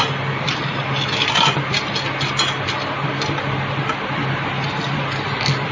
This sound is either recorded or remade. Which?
recorded